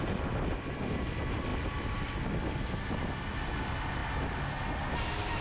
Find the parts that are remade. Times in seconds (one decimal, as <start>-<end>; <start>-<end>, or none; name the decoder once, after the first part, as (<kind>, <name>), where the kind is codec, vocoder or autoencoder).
none